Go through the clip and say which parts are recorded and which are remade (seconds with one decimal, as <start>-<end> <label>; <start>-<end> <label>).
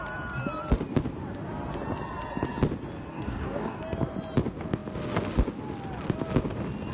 0.0-3.1 recorded; 3.1-3.8 remade; 3.8-6.9 recorded